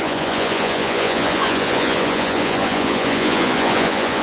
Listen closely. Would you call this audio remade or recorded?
remade